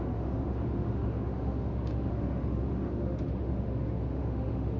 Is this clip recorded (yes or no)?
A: no